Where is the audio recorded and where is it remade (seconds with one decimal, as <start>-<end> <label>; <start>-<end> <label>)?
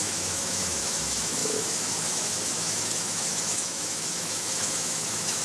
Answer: 0.0-5.4 remade